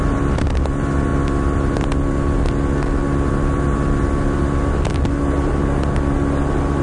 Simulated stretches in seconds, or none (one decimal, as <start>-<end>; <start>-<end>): none